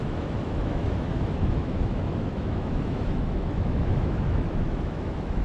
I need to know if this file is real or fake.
fake